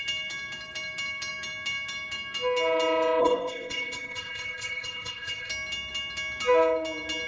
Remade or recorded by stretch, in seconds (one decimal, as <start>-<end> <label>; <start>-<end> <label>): 0.0-3.2 recorded; 3.2-5.5 remade; 5.5-7.3 recorded